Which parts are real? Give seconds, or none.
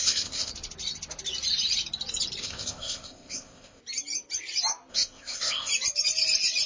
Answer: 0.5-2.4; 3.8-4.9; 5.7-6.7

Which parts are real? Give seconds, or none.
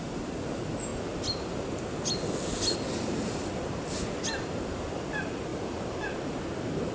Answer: 0.0-6.9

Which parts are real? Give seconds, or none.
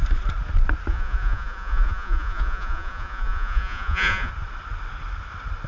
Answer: 0.0-0.9; 4.3-5.7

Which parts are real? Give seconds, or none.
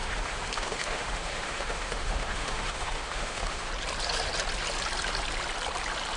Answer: 3.7-6.2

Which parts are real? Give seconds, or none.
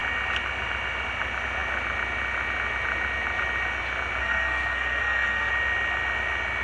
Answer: 0.0-4.2; 5.5-6.6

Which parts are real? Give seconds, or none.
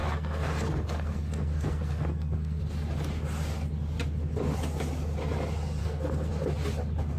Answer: 2.6-5.8; 6.3-7.2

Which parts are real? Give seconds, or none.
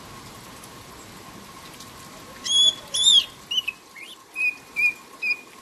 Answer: 0.0-5.6